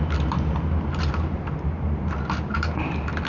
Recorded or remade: remade